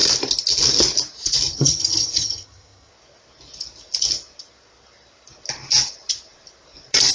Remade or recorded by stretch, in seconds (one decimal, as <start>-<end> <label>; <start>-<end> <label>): 0.0-1.5 recorded; 1.5-2.9 remade; 2.9-7.1 recorded